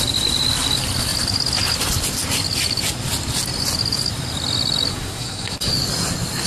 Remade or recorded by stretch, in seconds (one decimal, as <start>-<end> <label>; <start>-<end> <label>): 0.0-4.9 recorded; 4.9-5.7 remade; 5.7-6.5 recorded